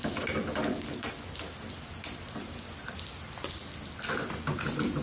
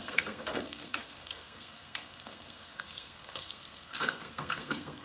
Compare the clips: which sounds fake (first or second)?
second